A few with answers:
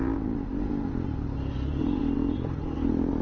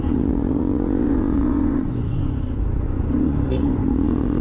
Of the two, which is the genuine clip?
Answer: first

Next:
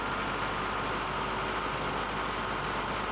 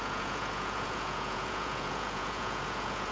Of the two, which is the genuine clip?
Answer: first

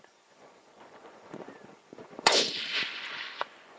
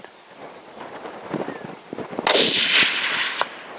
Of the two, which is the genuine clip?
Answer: second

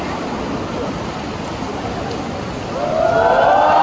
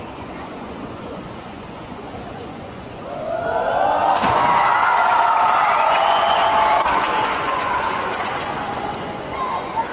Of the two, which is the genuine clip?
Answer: first